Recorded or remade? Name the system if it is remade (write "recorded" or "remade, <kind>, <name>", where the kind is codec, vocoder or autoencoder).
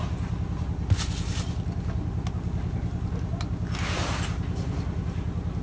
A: recorded